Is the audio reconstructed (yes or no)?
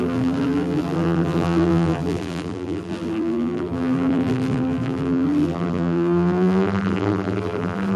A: yes